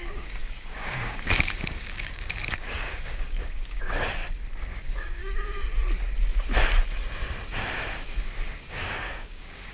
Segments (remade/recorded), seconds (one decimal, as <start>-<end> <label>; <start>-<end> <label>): 0.0-4.2 remade; 4.2-4.8 recorded; 4.8-5.2 remade; 5.2-8.6 recorded; 8.6-9.7 remade